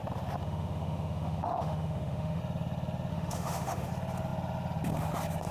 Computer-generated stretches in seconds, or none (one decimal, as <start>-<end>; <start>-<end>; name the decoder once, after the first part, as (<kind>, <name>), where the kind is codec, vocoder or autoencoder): 0.4-2.4 (autoencoder, DAC-VAE); 3.1-3.9